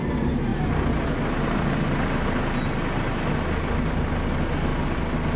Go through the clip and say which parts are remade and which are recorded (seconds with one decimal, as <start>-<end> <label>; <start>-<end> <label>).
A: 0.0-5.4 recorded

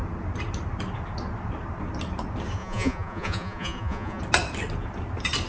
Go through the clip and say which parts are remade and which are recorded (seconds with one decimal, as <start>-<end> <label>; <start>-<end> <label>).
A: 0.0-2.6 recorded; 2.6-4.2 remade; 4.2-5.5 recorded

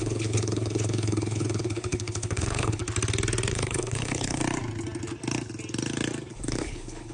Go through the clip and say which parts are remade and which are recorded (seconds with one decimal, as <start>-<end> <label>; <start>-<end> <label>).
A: 0.0-2.8 remade; 2.8-3.5 recorded; 3.5-4.4 remade; 4.4-6.3 recorded; 6.3-7.1 remade